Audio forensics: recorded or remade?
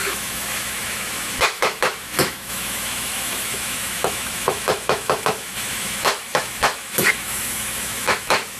remade